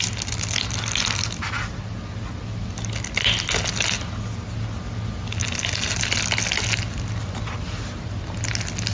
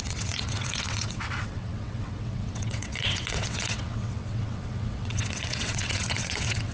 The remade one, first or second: second